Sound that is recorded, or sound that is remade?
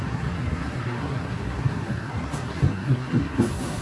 remade